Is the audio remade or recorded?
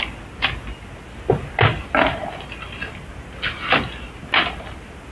recorded